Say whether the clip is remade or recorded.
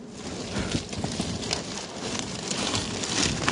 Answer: recorded